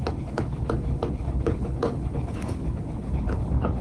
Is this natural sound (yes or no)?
no